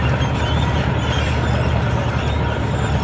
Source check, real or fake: real